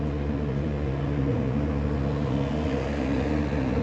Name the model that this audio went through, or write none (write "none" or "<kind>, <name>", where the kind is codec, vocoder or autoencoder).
vocoder, Vocos